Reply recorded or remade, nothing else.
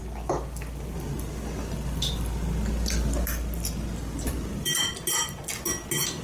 recorded